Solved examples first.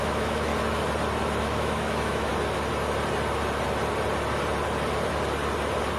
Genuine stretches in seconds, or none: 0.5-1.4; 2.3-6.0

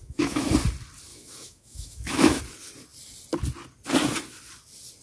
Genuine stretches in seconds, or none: 0.5-1.1; 2.4-5.0

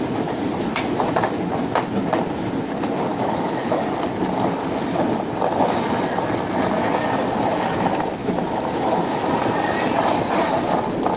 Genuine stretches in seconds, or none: 0.0-3.1; 3.9-8.2; 9.3-11.2

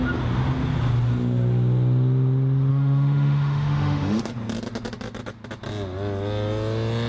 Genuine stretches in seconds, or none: 0.0-2.7; 4.3-7.1